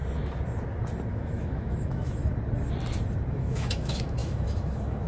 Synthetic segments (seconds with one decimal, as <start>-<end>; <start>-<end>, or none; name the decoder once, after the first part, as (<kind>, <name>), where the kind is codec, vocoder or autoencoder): 1.1-2.2 (autoencoder, DAC-VAE); 3.3-5.1